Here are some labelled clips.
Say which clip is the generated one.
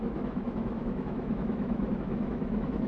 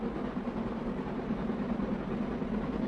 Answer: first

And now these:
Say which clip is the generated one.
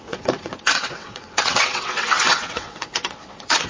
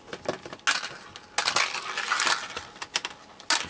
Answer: first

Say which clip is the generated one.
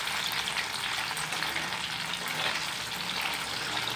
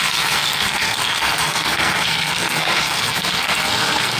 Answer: second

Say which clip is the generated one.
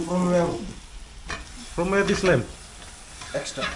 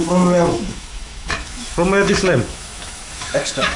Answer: second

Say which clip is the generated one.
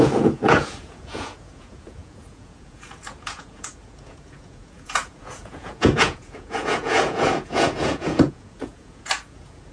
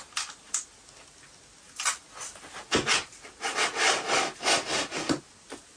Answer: first